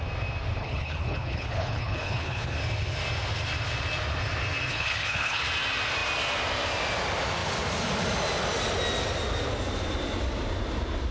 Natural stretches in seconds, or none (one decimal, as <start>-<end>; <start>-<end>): 0.0-0.5; 2.6-4.7; 5.4-11.1